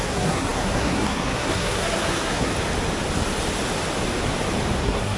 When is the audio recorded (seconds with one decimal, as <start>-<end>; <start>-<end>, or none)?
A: 2.5-4.8